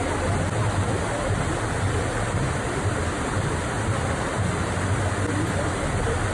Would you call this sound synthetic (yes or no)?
no